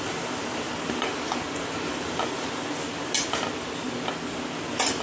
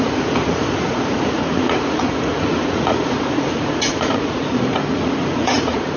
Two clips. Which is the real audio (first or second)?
first